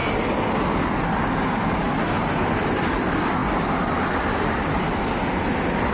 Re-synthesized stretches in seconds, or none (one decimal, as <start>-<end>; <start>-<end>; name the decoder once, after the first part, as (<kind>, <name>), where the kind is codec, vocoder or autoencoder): 1.0-3.4 (vocoder, BigVGAN v2); 4.1-5.9